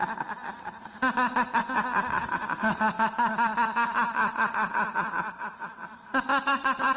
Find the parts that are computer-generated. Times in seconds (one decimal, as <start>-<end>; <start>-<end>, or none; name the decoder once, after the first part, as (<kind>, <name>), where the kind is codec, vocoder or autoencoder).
none